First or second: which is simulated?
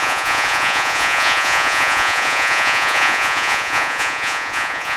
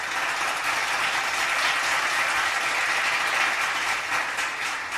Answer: first